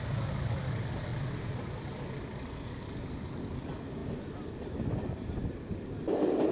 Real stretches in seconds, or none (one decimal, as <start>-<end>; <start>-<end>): 0.0-6.5